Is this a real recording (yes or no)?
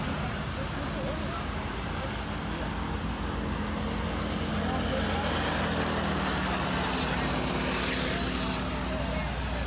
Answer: yes